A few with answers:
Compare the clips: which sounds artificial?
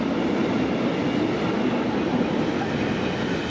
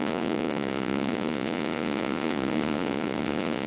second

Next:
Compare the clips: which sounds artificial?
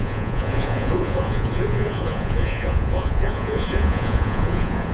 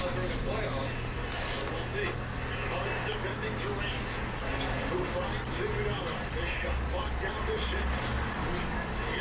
first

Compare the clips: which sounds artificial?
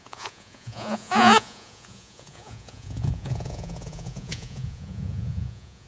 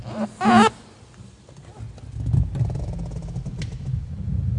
first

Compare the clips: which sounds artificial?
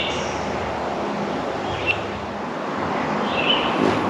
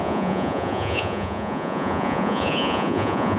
second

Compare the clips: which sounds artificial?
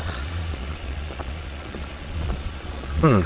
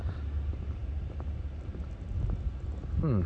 first